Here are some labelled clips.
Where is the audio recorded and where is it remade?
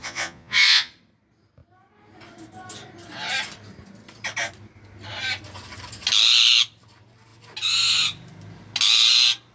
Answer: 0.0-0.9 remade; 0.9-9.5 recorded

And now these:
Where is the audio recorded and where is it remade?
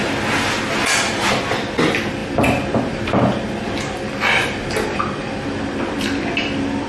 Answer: 0.0-6.9 recorded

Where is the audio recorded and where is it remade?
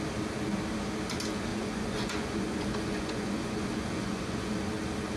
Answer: 0.0-1.5 recorded; 1.5-4.6 remade; 4.6-5.2 recorded